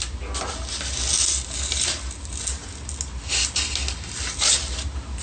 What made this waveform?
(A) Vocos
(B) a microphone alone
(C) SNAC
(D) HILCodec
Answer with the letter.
B